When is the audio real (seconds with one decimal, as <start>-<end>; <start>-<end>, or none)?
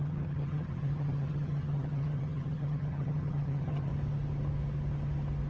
3.9-5.5